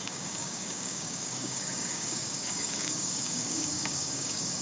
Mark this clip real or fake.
fake